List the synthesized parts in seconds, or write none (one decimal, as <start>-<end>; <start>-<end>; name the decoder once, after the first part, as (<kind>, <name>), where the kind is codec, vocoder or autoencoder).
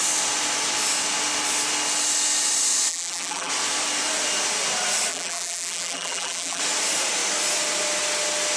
2.9-3.5 (vocoder, BigVGAN v2); 5.1-6.6